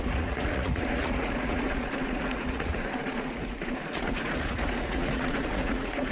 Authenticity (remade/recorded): remade